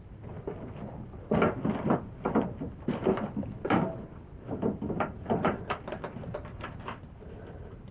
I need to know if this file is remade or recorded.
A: recorded